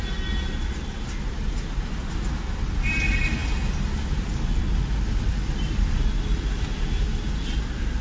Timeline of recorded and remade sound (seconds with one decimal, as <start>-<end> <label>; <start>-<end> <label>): 0.0-8.0 recorded